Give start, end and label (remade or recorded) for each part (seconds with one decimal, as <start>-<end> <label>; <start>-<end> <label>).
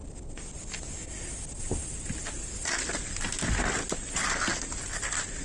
0.0-5.4 recorded